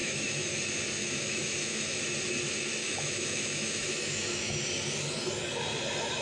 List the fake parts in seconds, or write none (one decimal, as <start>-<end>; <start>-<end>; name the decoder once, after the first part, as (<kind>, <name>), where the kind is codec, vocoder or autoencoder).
0.0-0.6 (autoencoder, DAC-VAE); 1.0-2.0; 2.8-4.6